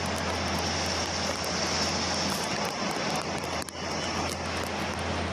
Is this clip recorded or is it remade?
recorded